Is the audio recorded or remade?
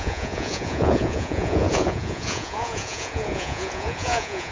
remade